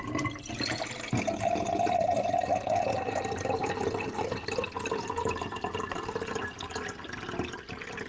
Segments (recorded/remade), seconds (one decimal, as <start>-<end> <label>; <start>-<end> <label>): 0.0-8.1 recorded